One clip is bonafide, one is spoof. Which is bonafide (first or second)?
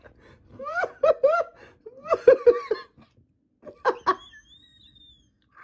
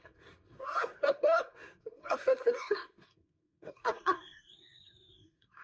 first